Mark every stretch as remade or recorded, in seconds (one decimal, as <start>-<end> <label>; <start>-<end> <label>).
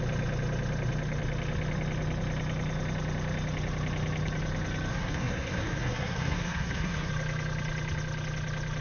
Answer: 0.0-4.9 recorded; 4.9-7.1 remade; 7.1-8.8 recorded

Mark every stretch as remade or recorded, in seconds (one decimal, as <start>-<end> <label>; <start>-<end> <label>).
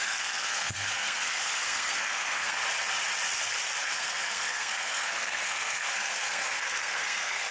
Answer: 0.0-2.6 remade; 2.6-3.8 recorded; 3.8-7.5 remade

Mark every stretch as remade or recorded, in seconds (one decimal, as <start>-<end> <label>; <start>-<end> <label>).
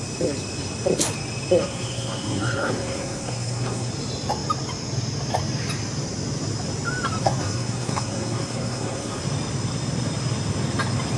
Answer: 0.0-1.6 recorded; 1.6-3.9 remade; 3.9-7.2 recorded; 7.2-9.2 remade; 9.2-11.2 recorded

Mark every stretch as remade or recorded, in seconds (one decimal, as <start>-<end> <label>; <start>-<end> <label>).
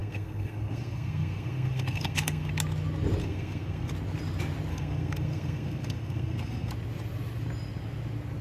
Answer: 0.0-2.5 remade; 2.5-3.2 recorded; 3.2-3.9 remade; 3.9-4.7 recorded; 4.7-6.7 remade; 6.7-8.4 recorded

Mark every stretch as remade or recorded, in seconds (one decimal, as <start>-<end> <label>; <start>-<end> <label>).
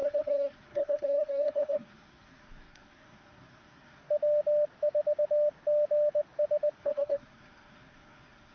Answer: 0.0-4.0 remade; 4.0-6.8 recorded; 6.8-8.5 remade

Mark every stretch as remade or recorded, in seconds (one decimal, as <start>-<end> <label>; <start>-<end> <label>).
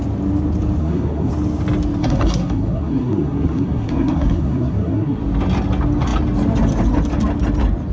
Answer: 0.0-0.8 recorded; 0.8-1.3 remade; 1.3-2.0 recorded; 2.0-5.2 remade; 5.2-7.9 recorded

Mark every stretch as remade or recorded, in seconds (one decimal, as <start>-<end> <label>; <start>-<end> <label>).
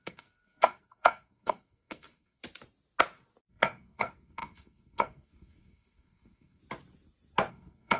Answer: 0.0-2.4 remade; 2.4-3.5 recorded; 3.5-6.6 remade; 6.6-7.5 recorded; 7.5-8.0 remade